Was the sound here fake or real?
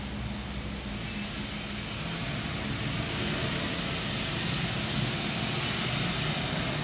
real